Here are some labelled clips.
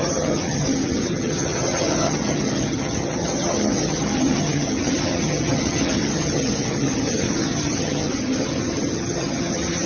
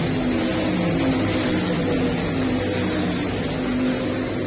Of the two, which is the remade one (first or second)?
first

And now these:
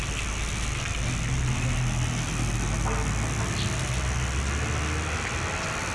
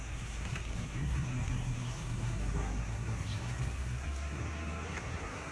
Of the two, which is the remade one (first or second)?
second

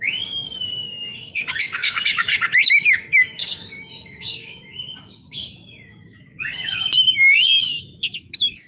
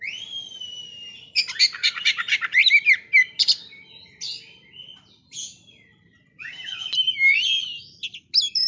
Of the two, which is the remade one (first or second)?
first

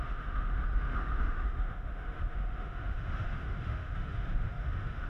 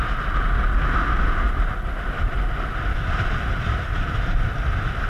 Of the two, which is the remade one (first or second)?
first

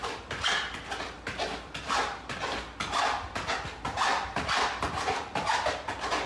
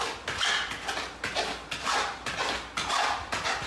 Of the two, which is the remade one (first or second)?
first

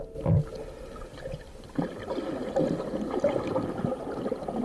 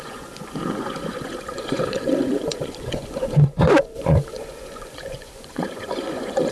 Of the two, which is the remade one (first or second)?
second